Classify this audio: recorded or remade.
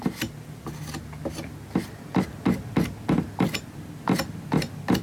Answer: recorded